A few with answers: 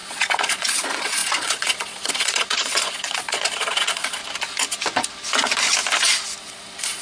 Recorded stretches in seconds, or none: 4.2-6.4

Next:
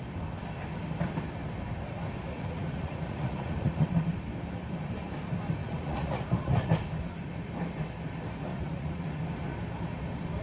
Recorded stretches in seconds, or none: 0.0-2.3; 4.0-5.6; 6.7-8.5; 9.2-10.4

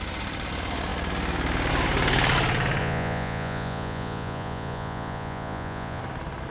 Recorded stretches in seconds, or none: 0.0-2.8; 6.0-6.5

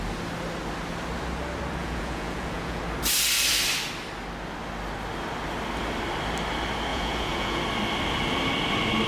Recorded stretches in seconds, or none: 0.0-1.8; 2.8-6.9; 7.6-9.1

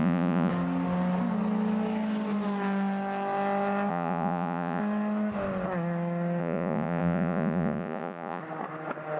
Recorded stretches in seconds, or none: 0.5-3.9; 4.8-6.4; 8.4-9.2

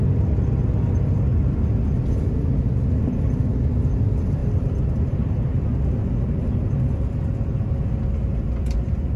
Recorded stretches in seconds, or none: 0.0-9.2